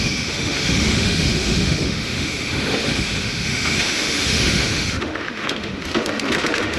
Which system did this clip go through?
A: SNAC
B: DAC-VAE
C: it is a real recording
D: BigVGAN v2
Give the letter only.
B